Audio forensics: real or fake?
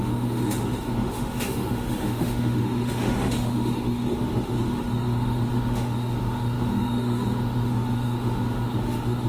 fake